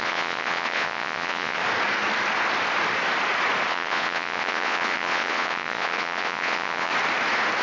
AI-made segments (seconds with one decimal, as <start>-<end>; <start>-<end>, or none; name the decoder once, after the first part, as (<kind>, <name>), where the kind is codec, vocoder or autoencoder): 0.0-1.6 (vocoder, Vocos); 3.7-6.9